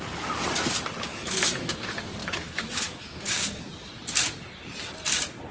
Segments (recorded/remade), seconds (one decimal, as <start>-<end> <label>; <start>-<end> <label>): 0.0-1.1 recorded; 1.1-1.7 remade; 1.7-2.2 recorded; 2.2-3.6 remade; 3.6-5.5 recorded